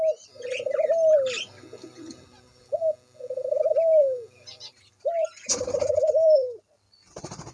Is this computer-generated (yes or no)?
yes